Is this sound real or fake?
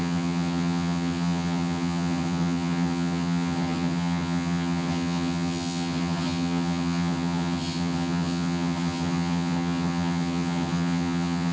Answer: fake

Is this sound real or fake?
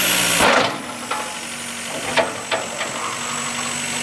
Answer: real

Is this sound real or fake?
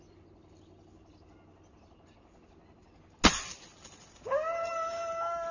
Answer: real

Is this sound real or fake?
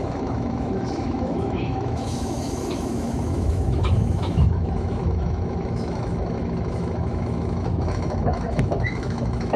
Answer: fake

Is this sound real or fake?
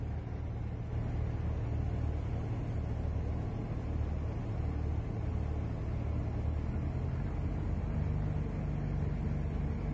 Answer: real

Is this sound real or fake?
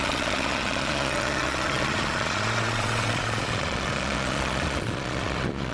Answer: fake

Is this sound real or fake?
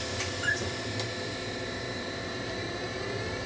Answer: fake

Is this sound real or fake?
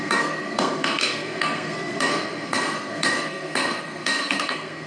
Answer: fake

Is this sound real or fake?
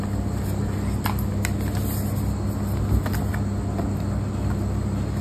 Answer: real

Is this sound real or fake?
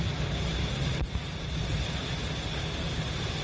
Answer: real